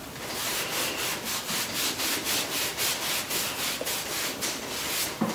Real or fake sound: real